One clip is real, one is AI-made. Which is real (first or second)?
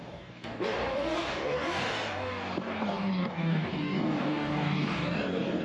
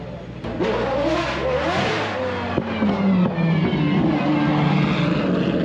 second